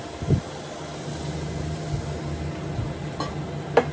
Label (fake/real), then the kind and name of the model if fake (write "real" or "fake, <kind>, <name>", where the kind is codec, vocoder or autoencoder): real